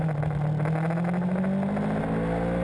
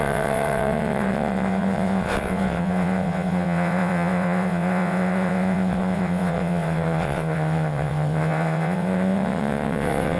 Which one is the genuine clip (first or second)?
first